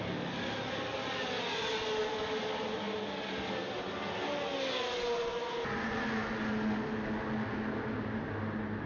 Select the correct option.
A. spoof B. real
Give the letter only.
B